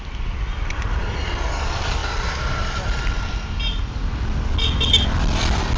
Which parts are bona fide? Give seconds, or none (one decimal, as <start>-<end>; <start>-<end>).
0.0-5.8